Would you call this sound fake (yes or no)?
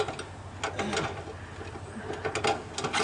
no